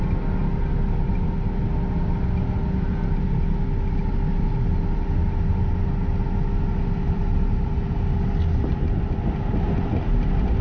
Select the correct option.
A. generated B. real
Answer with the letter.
B